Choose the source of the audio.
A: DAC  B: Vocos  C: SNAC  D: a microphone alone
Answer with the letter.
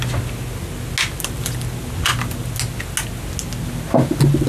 D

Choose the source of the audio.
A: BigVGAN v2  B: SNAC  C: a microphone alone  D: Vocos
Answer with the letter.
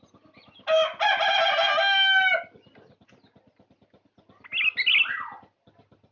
C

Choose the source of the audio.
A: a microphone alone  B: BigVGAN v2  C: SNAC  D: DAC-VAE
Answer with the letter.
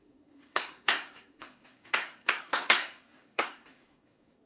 C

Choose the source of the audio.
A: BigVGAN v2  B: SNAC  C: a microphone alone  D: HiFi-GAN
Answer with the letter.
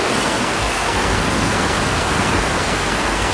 B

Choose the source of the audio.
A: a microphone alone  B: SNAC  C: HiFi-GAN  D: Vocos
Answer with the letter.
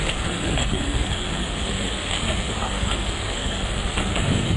B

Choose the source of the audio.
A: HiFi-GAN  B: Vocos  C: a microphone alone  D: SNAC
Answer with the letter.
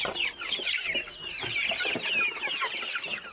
C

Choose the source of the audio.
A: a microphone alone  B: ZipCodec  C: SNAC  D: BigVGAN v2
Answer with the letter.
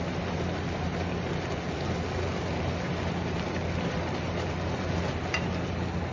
A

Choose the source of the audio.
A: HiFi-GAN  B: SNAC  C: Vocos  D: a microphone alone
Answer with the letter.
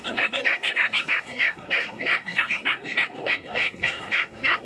B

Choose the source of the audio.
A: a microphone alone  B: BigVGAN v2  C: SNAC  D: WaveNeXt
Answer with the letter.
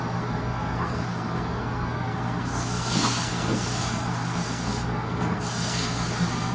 C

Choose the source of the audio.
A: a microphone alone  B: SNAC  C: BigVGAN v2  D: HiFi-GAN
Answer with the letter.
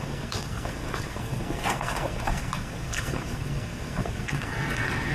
B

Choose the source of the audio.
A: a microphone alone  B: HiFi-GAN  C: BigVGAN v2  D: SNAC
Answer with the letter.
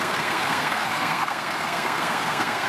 D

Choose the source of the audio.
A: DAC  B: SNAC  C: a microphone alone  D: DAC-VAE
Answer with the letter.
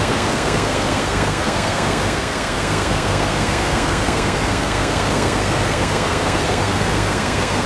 B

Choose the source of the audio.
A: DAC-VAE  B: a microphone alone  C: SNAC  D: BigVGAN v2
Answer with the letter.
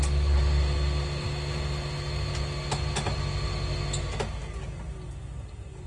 B